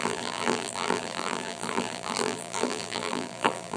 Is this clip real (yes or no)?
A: no